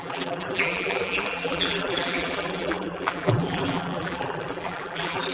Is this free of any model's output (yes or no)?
no